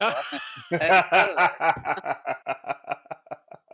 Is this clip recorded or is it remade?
recorded